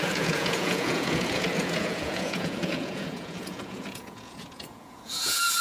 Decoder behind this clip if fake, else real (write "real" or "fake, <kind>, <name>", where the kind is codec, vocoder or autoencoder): fake, vocoder, Vocos